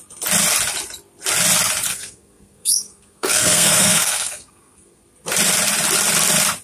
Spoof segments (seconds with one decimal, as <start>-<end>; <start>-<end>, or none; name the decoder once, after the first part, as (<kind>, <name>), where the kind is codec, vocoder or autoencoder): 1.9-5.0 (codec, SNAC)